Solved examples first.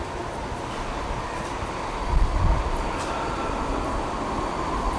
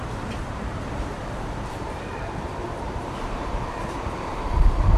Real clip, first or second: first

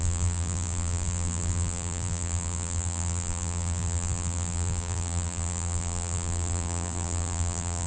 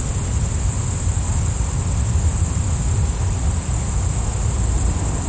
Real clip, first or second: second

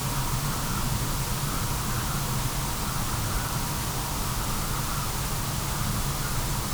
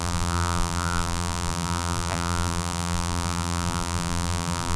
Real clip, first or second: first